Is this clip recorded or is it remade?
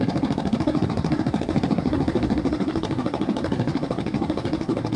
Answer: remade